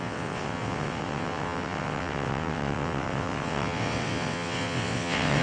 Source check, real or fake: fake